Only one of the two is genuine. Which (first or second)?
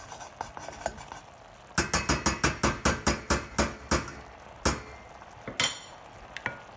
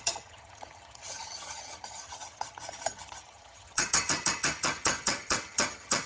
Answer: first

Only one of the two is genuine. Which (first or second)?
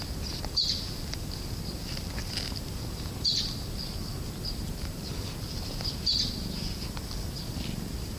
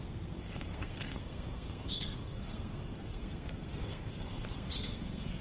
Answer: first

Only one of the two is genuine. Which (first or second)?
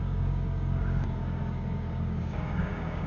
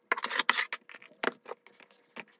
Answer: second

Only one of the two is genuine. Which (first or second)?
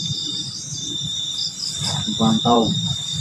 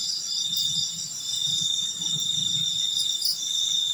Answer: second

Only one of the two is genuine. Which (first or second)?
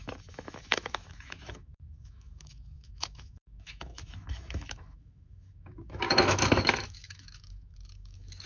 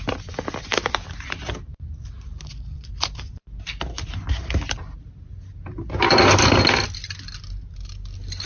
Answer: second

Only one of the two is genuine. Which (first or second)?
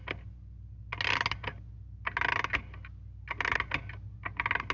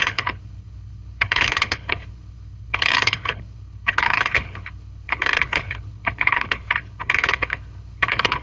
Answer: first